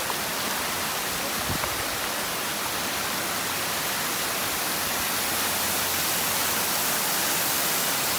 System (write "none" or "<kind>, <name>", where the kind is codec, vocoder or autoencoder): none